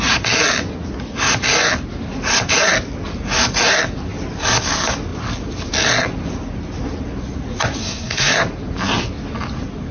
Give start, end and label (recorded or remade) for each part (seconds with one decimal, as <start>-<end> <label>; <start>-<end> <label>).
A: 0.0-7.8 recorded; 7.8-8.3 remade; 8.3-9.9 recorded